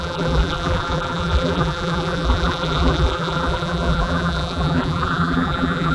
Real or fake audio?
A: fake